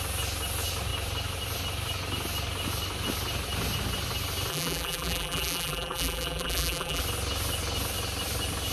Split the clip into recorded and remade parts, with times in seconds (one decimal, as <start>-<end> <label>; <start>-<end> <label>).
0.0-4.5 recorded; 4.5-7.0 remade; 7.0-8.7 recorded

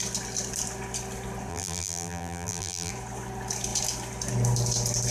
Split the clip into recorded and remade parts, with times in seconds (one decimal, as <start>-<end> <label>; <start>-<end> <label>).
0.0-1.5 recorded; 1.5-2.9 remade; 2.9-5.1 recorded

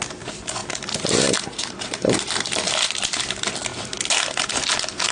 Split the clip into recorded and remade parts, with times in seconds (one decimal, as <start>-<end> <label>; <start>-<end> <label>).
0.0-0.6 recorded; 0.6-2.9 remade; 2.9-5.1 recorded

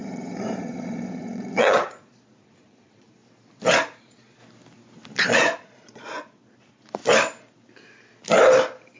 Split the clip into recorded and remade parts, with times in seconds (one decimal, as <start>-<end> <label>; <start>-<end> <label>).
0.0-3.2 remade; 3.2-4.0 recorded; 4.0-4.4 remade; 4.4-5.2 recorded; 5.2-7.0 remade; 7.0-9.0 recorded

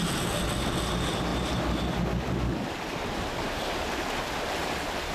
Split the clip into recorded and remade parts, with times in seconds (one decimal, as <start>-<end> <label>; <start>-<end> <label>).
0.0-5.1 recorded